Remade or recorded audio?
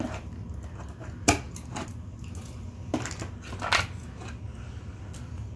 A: recorded